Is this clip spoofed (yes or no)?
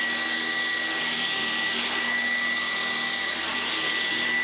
no